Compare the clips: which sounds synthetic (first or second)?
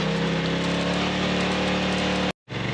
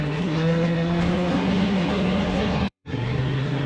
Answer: second